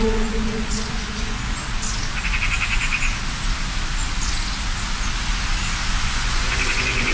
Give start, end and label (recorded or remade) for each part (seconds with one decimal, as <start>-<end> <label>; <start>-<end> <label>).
0.0-1.6 remade; 1.6-5.9 recorded; 5.9-7.1 remade